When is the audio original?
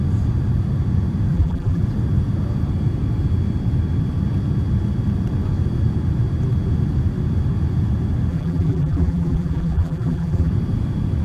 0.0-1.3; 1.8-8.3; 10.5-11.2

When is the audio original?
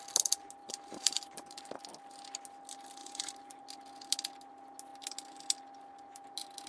0.0-0.6; 1.6-3.0; 3.6-6.7